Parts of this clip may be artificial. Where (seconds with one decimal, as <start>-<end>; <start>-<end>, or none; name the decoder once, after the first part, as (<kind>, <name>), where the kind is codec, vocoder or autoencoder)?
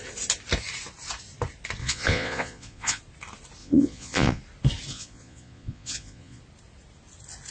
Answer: 1.8-3.0 (vocoder, Vocos); 3.6-4.4; 4.9-6.4